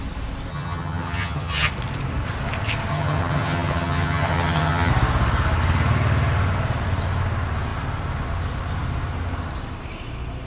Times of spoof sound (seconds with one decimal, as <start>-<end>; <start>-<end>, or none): 0.5-1.7; 2.9-4.9